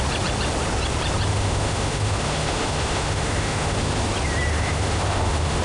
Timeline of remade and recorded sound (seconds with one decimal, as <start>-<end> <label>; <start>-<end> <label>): 0.0-1.3 recorded; 1.3-4.0 remade; 4.0-4.5 recorded; 4.5-5.6 remade